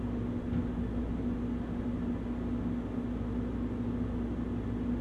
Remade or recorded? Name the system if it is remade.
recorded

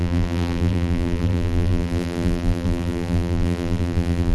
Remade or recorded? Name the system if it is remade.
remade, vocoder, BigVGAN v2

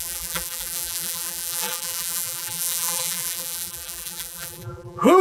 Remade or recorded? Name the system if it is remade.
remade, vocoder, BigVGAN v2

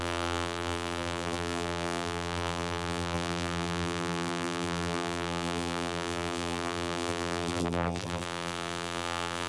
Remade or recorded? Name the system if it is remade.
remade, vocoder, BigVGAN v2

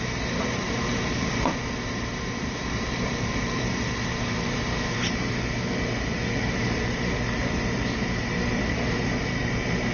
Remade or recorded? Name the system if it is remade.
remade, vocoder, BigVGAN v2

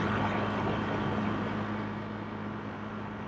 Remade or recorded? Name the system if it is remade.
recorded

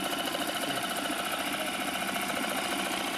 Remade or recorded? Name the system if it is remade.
remade, vocoder, BigVGAN v2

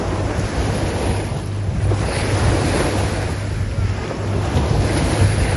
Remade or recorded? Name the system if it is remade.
recorded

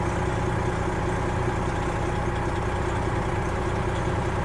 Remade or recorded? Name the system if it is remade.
recorded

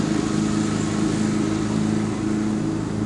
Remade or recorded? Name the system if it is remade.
recorded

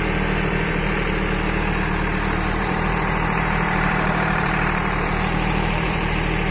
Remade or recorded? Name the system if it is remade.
remade, vocoder, BigVGAN v2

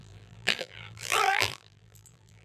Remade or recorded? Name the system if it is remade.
remade, vocoder, BigVGAN v2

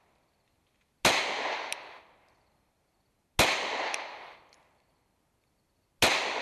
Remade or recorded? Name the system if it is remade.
recorded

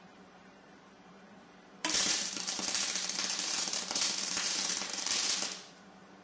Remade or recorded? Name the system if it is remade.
remade, vocoder, BigVGAN v2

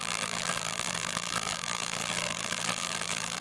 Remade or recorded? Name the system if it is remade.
remade, vocoder, BigVGAN v2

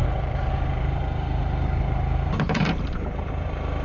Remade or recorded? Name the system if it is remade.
remade, vocoder, BigVGAN v2